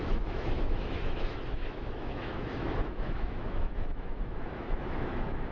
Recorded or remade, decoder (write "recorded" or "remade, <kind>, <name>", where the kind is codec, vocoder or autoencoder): remade, autoencoder, DAC-VAE